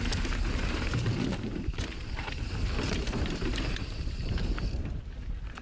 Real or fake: fake